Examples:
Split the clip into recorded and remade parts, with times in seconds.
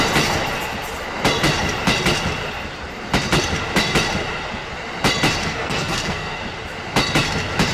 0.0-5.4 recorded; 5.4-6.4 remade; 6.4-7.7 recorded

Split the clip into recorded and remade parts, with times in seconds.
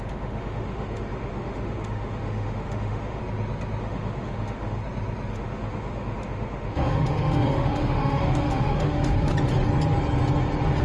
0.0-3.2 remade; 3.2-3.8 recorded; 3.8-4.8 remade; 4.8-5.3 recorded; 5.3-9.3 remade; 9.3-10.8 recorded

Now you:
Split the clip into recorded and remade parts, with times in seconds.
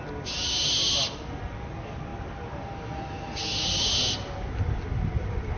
0.0-5.6 recorded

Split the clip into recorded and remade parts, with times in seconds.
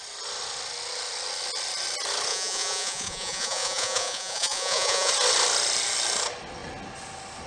0.0-2.3 recorded; 2.3-5.1 remade; 5.1-7.5 recorded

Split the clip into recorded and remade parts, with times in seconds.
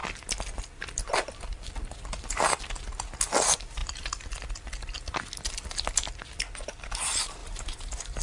0.0-7.4 recorded; 7.4-8.2 remade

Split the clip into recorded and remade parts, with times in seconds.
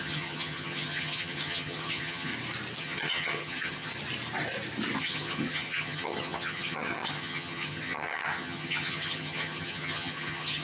0.0-2.3 remade; 2.3-2.8 recorded; 2.8-3.9 remade; 3.9-5.0 recorded; 5.0-10.6 remade